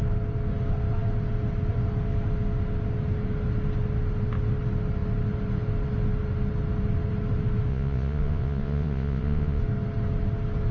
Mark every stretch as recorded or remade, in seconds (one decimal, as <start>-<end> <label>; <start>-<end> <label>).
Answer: 0.0-7.7 recorded; 7.7-9.6 remade; 9.6-10.7 recorded